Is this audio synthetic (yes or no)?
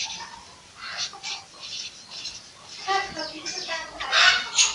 no